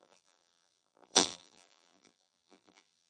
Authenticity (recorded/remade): remade